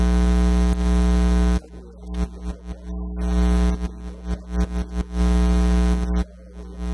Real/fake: real